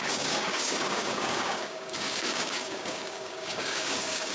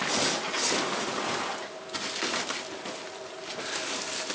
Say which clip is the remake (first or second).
first